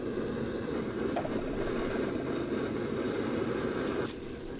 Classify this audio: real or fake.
real